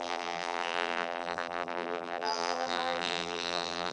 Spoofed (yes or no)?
yes